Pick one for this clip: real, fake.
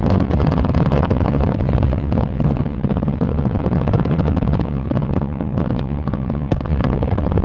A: fake